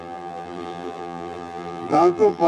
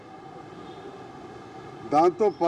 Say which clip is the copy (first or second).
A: first